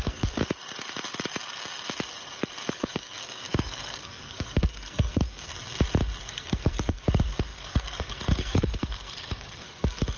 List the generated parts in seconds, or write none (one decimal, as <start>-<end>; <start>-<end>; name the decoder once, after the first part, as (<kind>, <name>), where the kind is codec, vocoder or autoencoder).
0.0-0.4 (codec, SNAC); 2.7-5.5; 6.2-10.2